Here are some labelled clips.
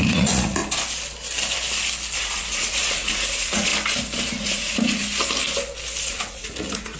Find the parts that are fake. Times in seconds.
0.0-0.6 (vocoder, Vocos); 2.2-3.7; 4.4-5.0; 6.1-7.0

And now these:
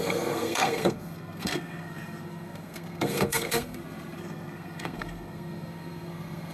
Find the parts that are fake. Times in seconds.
0.0-6.5 (codec, SNAC)

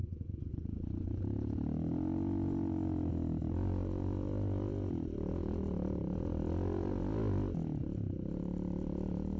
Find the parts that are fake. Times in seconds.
0.0-1.2 (vocoder, Vocos)

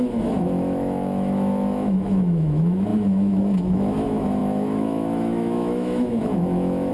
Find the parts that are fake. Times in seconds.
0.0-6.9 (autoencoder, DAC-VAE)

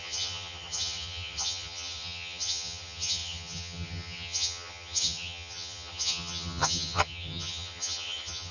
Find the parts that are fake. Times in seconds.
0.0-8.5 (vocoder, HiFi-GAN)

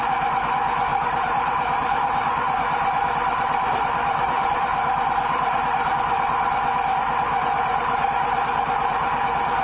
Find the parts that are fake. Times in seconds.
0.9-5.9 (vocoder, BigVGAN v2)

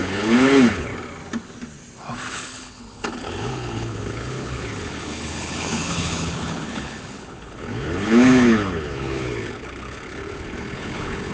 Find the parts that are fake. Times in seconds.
0.0-0.9 (codec, HILCodec); 2.3-11.3